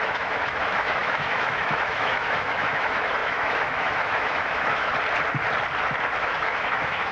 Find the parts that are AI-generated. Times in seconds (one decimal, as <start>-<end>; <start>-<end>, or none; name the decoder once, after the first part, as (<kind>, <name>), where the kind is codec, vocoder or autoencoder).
0.0-4.9 (autoencoder, DAC-VAE); 6.2-7.1

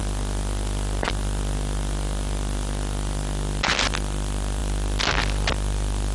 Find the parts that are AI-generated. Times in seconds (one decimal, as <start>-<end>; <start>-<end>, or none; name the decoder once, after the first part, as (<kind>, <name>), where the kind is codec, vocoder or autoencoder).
none

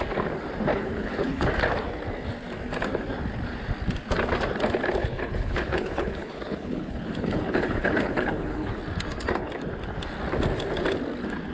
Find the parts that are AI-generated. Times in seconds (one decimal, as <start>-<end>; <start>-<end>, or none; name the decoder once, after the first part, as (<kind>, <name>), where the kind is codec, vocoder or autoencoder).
0.7-1.5 (codec, HILCodec); 5.0-8.8

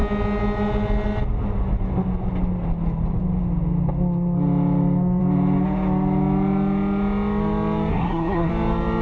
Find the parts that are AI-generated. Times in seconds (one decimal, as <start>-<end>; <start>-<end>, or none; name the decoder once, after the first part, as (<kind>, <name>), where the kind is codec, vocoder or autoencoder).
7.9-8.5 (codec, SNAC)